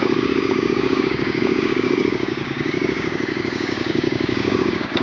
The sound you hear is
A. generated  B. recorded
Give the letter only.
A